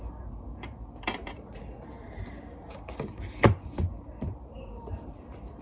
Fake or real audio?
fake